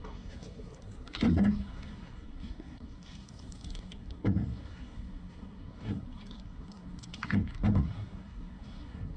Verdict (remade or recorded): remade